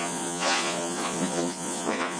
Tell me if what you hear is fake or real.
fake